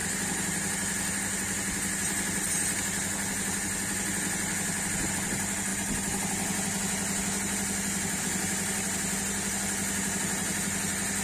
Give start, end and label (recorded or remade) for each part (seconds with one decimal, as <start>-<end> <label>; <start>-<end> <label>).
0.0-11.2 recorded